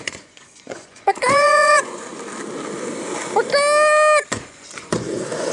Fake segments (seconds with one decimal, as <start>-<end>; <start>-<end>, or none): 0.0-2.1; 4.3-5.5